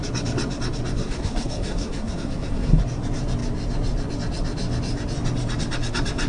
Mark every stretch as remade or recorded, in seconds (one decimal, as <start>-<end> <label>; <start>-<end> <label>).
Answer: 0.0-1.0 recorded; 1.0-2.8 remade; 2.8-6.3 recorded